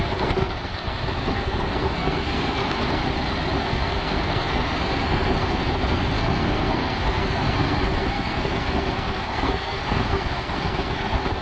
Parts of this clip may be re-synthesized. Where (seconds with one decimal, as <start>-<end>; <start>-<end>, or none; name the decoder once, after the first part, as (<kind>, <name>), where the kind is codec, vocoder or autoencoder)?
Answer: 0.0-3.0 (codec, SNAC); 3.6-11.4